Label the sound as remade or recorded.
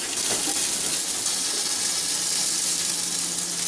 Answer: recorded